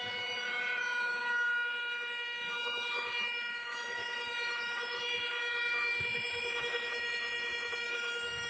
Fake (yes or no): yes